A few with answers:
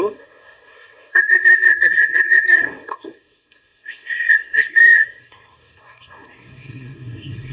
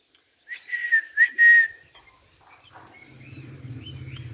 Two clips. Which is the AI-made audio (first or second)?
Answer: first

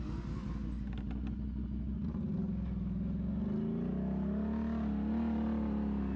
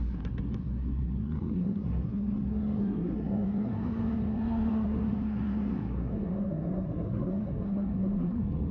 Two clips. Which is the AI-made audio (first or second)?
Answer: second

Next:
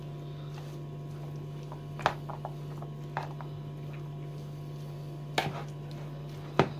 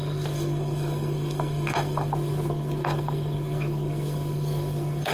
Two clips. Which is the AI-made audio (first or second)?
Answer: second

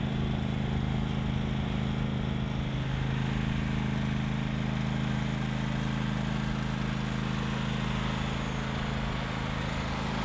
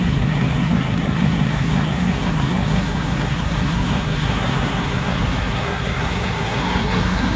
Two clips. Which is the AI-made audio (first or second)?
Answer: second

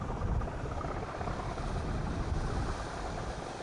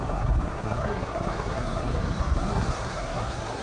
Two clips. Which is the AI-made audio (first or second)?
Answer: second